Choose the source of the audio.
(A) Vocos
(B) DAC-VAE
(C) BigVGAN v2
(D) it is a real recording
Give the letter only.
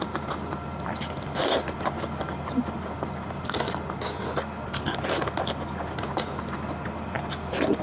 D